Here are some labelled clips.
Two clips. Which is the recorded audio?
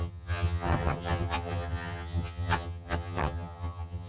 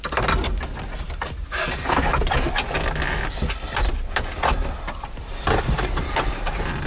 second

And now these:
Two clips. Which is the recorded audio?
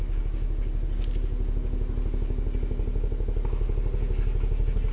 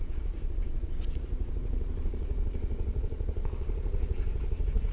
first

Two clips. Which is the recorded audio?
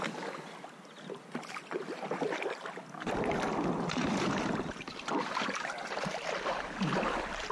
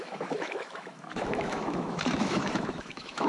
first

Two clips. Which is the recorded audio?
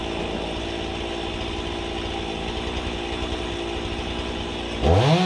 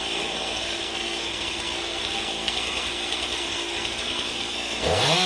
first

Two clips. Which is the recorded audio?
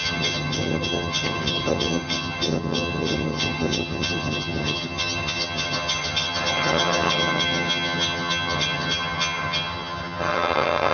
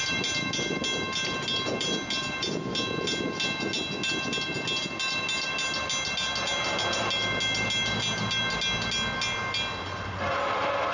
second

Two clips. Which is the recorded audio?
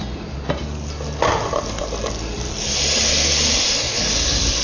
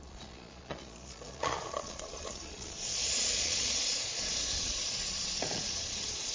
first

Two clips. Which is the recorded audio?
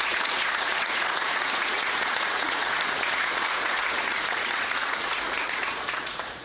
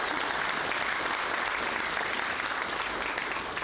second